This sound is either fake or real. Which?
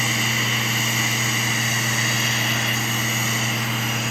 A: real